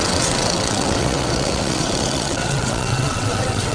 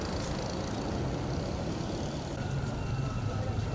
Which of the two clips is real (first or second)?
second